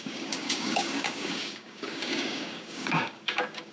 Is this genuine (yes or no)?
no